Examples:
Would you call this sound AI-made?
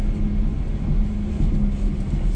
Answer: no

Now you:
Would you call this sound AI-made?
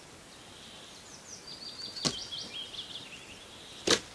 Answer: no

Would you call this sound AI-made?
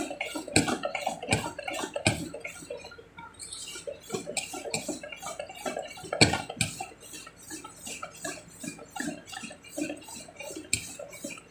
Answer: no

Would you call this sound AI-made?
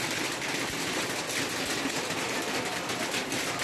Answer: no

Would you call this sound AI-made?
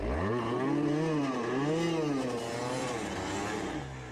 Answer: no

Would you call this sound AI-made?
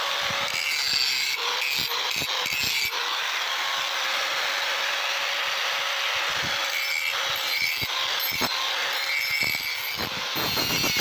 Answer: no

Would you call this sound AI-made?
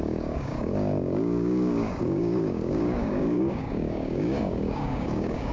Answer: yes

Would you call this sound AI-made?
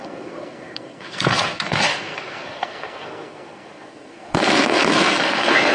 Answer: yes